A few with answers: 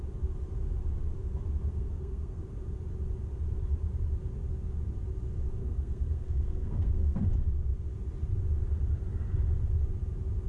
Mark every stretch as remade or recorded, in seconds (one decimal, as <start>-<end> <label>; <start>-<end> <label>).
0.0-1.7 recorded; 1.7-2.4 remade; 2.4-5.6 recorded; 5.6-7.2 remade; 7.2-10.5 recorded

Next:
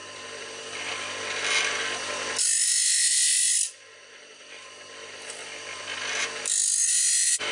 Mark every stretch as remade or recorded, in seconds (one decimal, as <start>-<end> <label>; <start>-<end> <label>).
0.0-7.5 remade

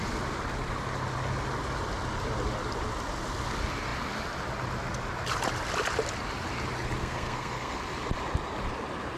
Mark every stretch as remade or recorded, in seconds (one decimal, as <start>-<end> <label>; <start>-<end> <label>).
0.0-7.0 recorded; 7.0-7.8 remade; 7.8-9.2 recorded

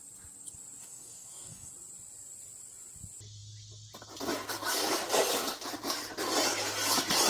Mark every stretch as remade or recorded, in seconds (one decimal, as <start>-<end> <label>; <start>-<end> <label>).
0.0-0.8 recorded; 0.8-1.7 remade; 1.7-7.3 recorded

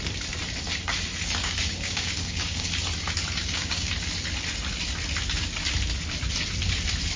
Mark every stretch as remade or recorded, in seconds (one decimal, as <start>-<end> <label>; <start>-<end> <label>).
0.0-1.4 recorded; 1.4-2.8 remade; 2.8-3.4 recorded; 3.4-3.9 remade; 3.9-7.2 recorded

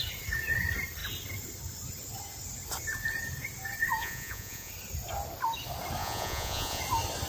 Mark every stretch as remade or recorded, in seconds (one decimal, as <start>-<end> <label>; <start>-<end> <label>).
0.0-4.0 recorded; 4.0-4.7 remade; 4.7-6.0 recorded; 6.0-6.8 remade; 6.8-7.3 recorded